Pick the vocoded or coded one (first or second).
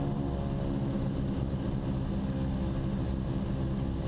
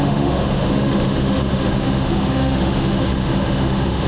second